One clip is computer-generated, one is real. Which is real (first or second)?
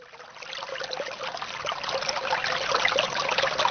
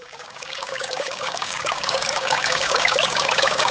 first